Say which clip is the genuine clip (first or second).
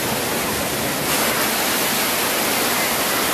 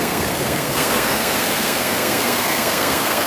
first